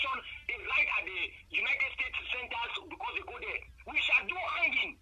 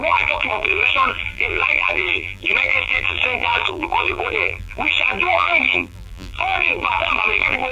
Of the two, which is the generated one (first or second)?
second